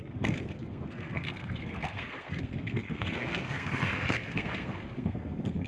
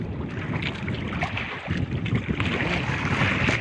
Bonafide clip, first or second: second